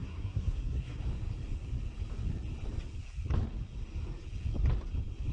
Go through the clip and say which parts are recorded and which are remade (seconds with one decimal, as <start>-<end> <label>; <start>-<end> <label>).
0.0-1.0 remade; 1.0-5.3 recorded